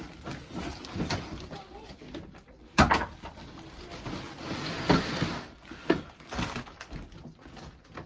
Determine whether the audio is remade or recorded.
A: recorded